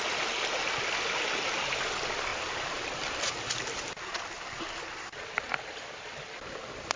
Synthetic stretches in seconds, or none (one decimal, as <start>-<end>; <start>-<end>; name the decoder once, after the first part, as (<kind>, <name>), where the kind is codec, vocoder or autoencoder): none